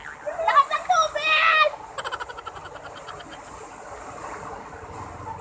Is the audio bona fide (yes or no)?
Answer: yes